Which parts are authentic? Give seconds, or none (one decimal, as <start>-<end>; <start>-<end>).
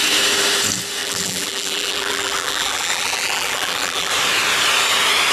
0.0-1.0; 4.1-5.3